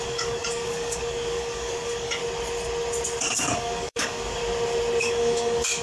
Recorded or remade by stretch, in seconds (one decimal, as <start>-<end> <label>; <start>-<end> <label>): 0.0-2.2 remade; 2.2-3.3 recorded; 3.3-4.4 remade; 4.4-5.0 recorded; 5.0-5.8 remade